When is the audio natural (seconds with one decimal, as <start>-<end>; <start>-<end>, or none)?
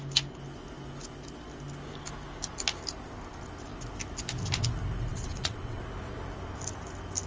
0.0-5.1; 5.8-7.3